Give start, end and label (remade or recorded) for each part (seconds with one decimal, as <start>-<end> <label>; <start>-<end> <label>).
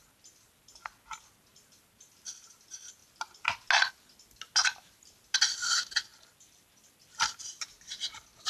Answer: 0.0-6.1 recorded; 6.1-7.5 remade; 7.5-8.5 recorded